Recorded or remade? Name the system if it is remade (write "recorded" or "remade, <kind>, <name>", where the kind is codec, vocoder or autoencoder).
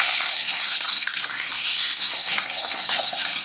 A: remade, codec, SNAC